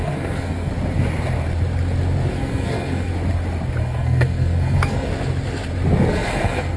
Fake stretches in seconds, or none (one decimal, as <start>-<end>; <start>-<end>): 0.0-0.7; 2.3-3.1; 3.8-5.1; 6.1-6.8